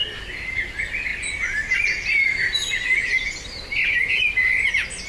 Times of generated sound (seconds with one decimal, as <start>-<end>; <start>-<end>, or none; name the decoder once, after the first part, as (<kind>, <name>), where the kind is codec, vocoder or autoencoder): none